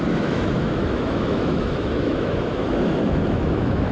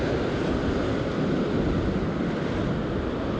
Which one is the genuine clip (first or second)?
second